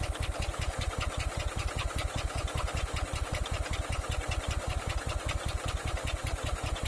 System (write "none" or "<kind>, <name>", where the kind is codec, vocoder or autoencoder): none